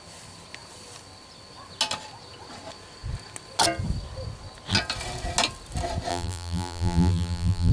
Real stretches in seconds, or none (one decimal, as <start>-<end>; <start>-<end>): 0.0-6.1

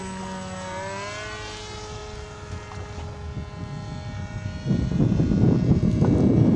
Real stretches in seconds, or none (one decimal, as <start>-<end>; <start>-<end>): 0.0-6.6

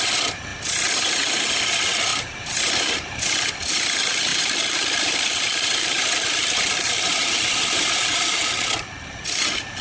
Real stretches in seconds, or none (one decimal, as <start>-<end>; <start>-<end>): 0.0-0.5; 1.1-2.1; 3.2-4.3; 8.5-9.8

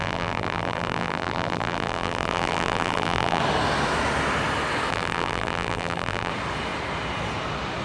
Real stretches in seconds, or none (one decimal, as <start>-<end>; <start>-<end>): 3.4-4.9; 6.3-7.8

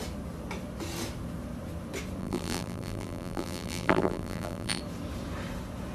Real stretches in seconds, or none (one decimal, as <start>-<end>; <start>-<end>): 0.0-2.2; 4.8-5.9

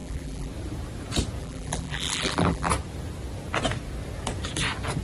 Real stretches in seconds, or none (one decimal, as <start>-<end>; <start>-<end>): 0.5-1.4; 2.7-5.0

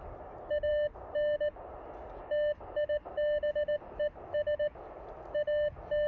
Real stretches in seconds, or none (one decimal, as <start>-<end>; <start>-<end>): 0.0-6.1